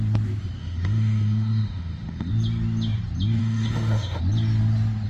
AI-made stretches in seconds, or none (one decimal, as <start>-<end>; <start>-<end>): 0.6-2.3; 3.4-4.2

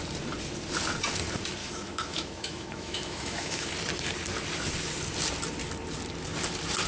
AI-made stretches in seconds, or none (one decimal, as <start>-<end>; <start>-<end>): 1.6-3.7

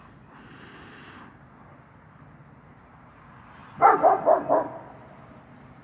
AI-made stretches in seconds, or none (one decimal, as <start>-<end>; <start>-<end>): none